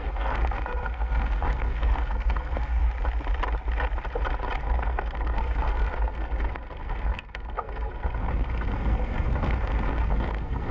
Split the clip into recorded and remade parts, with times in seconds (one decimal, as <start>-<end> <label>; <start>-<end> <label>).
0.0-2.8 remade; 2.8-4.6 recorded; 4.6-10.7 remade